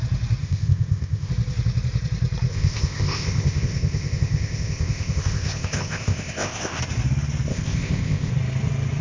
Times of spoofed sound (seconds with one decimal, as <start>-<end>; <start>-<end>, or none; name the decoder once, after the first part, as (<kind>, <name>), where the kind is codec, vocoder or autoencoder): 0.4-1.3 (codec, ZipCodec); 2.5-6.8; 7.5-8.3